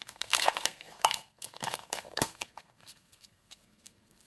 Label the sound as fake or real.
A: fake